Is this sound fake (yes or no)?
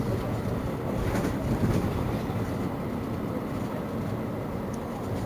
yes